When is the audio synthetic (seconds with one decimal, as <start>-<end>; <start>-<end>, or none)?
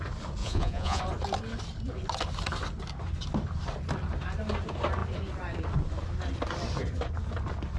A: 0.4-1.0